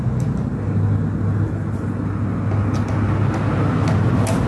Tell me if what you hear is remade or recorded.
recorded